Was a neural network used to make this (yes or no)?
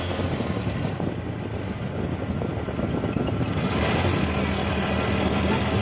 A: no